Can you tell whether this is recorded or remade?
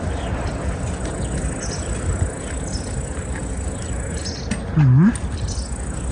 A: recorded